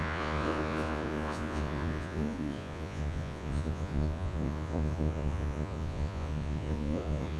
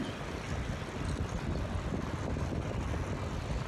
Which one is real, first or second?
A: second